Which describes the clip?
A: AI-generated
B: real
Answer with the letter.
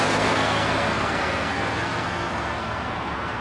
A